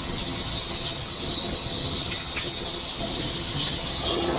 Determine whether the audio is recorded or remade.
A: remade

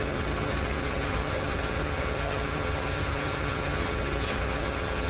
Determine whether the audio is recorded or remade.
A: remade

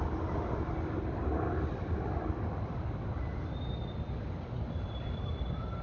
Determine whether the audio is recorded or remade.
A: recorded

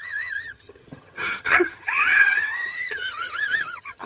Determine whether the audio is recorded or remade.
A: remade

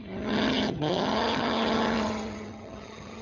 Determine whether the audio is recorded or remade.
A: remade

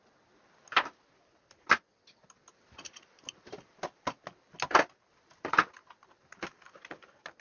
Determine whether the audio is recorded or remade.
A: recorded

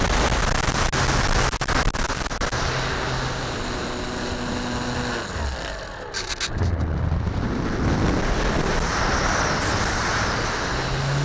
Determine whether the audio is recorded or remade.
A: recorded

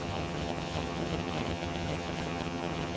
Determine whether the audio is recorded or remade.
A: remade